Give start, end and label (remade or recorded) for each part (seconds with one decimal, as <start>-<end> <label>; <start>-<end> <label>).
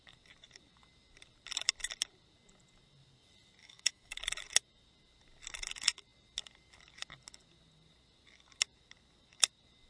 0.0-3.6 recorded; 3.6-4.2 remade; 4.2-9.9 recorded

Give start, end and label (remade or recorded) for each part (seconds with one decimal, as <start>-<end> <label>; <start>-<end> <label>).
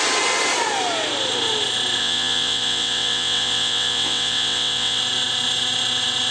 0.0-2.0 recorded; 2.0-5.0 remade; 5.0-6.3 recorded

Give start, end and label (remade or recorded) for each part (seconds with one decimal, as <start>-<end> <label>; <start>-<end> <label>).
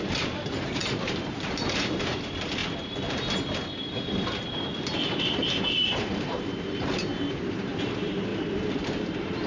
0.0-2.6 remade; 2.6-5.7 recorded; 5.7-9.5 remade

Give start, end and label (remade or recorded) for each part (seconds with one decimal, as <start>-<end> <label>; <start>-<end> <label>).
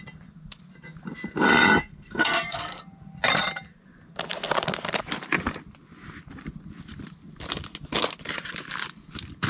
0.0-1.8 recorded; 1.8-2.8 remade; 2.8-9.5 recorded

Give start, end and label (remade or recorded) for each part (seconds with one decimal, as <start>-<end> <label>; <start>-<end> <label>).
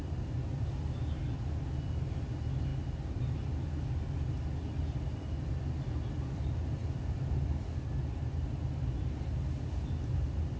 0.0-10.6 recorded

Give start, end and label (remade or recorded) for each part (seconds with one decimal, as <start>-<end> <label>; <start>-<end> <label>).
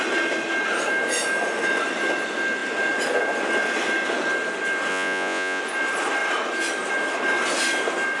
0.0-4.9 recorded; 4.9-5.6 remade; 5.6-8.2 recorded